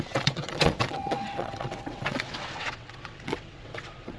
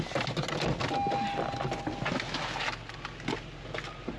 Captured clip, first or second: second